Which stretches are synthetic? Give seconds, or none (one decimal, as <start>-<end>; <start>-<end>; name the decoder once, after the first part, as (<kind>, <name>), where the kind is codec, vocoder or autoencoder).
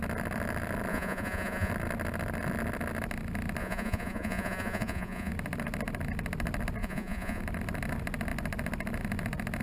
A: 0.9-1.7 (vocoder, Vocos); 3.6-5.3; 6.8-7.4